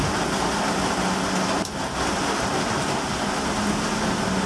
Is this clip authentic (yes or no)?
yes